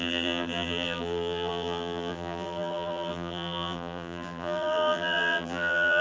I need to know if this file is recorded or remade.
remade